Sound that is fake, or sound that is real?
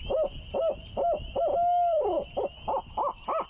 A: real